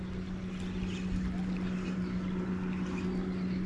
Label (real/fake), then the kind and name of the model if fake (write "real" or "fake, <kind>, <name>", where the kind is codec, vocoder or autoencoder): real